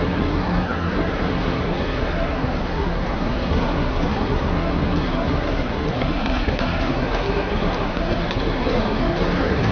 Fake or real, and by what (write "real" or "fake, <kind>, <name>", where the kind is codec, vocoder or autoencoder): fake, codec, SNAC